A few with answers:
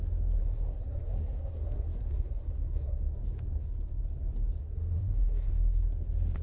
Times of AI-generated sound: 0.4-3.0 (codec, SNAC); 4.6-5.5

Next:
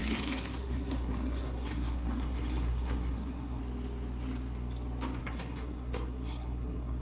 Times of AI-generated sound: 0.0-3.6 (codec, SNAC); 5.2-7.0

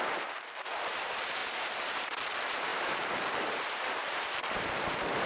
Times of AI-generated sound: 0.0-5.3 (vocoder, BigVGAN v2)

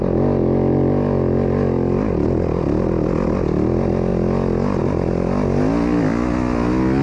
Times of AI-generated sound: none